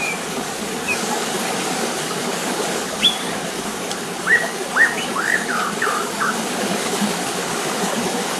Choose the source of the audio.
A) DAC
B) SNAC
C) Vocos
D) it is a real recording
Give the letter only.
A